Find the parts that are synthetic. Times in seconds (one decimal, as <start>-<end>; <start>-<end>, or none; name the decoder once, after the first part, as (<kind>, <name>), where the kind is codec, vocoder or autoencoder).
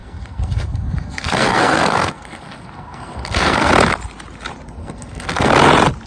0.0-3.7 (codec, SNAC); 4.8-5.5